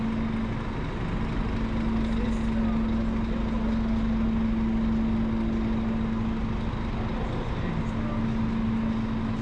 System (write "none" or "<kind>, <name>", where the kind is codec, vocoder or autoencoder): none